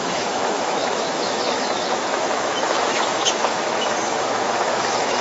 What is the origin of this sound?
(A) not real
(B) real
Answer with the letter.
A